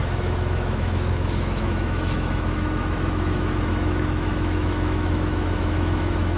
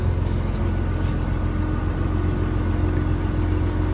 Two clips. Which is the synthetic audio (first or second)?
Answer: first